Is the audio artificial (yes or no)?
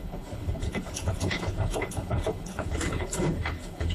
yes